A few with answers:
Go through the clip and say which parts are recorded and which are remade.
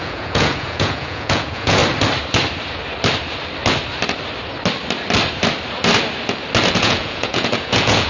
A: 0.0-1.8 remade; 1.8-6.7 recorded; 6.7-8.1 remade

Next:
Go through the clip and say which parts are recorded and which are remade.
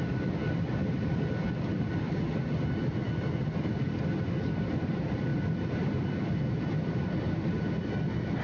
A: 0.0-8.4 recorded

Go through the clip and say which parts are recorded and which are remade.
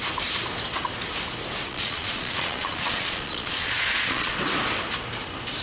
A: 0.0-1.7 recorded; 1.7-4.3 remade; 4.3-5.6 recorded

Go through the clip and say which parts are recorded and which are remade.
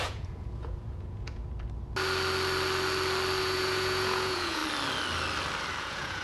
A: 0.0-1.4 remade; 1.4-3.4 recorded; 3.4-4.6 remade; 4.6-5.8 recorded; 5.8-6.2 remade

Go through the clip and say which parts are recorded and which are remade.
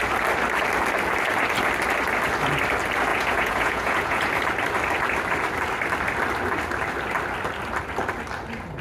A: 0.0-3.1 recorded; 3.1-4.3 remade; 4.3-8.8 recorded